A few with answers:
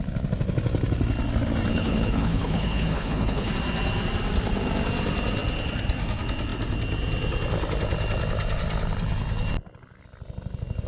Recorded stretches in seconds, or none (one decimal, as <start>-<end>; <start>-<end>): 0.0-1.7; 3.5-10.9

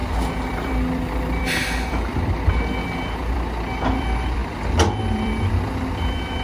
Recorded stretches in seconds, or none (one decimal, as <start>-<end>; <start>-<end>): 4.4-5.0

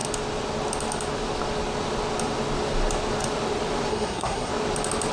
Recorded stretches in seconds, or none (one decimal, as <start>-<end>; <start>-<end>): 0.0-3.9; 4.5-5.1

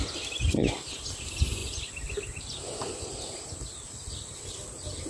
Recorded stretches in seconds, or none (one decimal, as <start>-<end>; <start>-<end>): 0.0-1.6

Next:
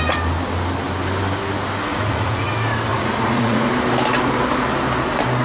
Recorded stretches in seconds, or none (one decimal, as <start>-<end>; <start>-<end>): 0.0-1.9; 2.5-2.9; 3.7-5.4